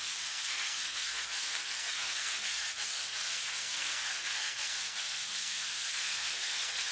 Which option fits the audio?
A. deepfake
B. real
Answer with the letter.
A